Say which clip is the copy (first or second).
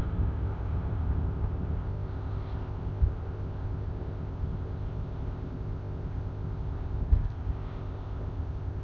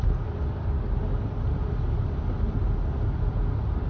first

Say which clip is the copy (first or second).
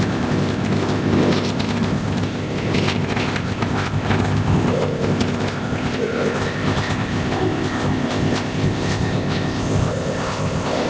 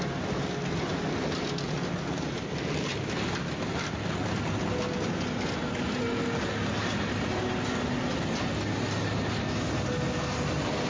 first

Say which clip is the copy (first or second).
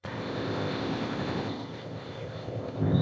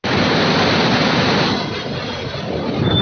first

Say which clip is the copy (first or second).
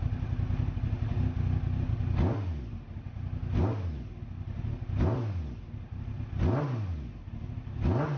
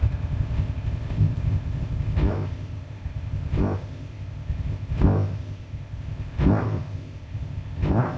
second